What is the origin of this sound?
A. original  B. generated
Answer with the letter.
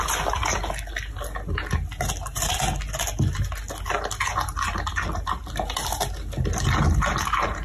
A